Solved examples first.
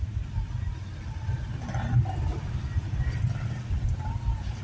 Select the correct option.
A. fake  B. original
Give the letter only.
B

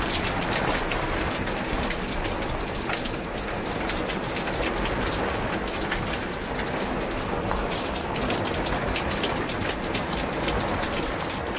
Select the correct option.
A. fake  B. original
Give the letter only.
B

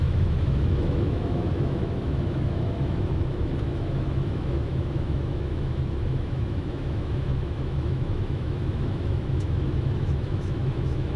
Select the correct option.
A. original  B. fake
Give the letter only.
B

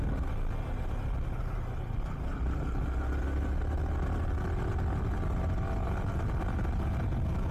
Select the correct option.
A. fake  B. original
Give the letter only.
B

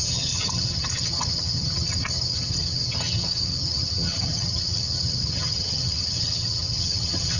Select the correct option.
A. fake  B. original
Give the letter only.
A